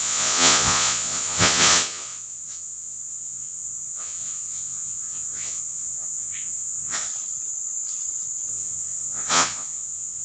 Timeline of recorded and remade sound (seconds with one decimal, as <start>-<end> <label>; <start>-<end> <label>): 0.0-7.1 remade; 7.1-8.5 recorded; 8.5-10.2 remade